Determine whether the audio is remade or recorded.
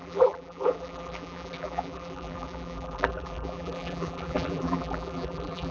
remade